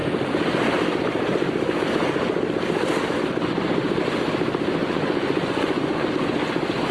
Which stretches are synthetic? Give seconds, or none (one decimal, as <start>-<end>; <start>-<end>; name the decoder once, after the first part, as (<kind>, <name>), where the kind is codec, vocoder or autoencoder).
4.8-6.1 (vocoder, Vocos)